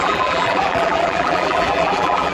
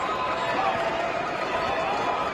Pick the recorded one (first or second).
second